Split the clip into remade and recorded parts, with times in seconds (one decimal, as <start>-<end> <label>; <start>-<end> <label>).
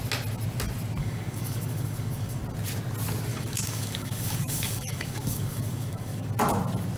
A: 0.0-1.0 recorded; 1.0-2.4 remade; 2.4-3.3 recorded; 3.3-6.3 remade; 6.3-7.0 recorded